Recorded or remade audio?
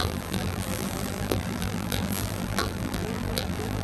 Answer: remade